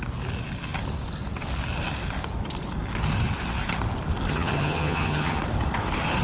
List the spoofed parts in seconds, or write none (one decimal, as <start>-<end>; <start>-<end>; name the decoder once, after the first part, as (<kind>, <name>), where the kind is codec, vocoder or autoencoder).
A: 4.3-5.4 (vocoder, HiFi-GAN)